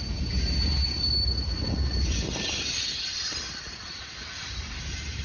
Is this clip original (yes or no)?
no